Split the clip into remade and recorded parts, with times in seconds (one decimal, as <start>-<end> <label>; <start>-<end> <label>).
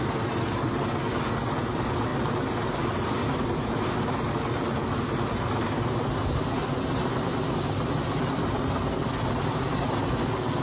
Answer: 0.0-10.6 recorded